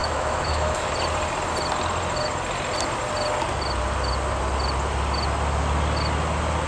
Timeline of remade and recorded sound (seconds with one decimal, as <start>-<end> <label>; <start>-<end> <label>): 0.0-0.9 remade; 0.9-6.7 recorded